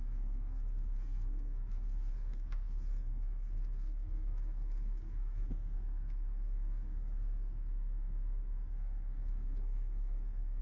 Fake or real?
fake